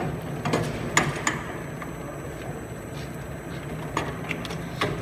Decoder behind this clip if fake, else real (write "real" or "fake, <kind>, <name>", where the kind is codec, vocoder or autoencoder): real